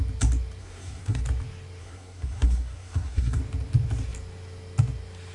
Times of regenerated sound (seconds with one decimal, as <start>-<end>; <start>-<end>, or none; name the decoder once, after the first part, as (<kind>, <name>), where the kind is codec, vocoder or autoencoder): 0.6-1.2 (codec, SNAC); 1.8-3.4